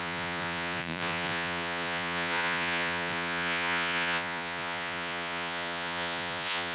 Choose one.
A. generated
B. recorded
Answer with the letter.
A